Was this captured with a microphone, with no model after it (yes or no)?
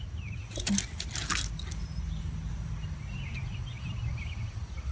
yes